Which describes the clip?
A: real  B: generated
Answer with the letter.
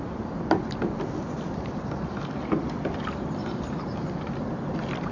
B